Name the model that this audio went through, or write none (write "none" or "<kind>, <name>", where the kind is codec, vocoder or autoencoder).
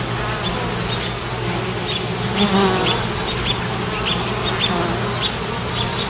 none